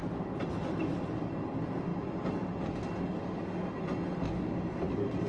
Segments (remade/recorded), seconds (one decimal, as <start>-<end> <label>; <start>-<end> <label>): 0.0-5.3 recorded